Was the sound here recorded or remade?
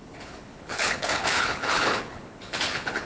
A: remade